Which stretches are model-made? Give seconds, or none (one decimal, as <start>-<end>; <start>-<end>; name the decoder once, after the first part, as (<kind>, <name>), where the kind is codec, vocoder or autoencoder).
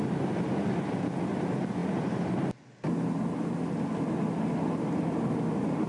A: none